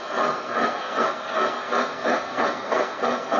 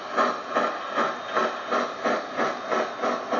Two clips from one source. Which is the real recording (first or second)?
second